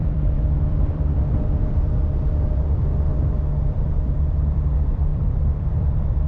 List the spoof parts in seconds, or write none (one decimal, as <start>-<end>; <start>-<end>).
0.0-3.1; 3.6-6.3